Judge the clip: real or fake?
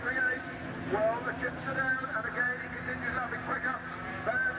real